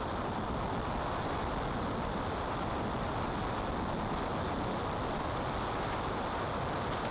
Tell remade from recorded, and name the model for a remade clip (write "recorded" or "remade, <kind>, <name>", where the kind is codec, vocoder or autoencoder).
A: recorded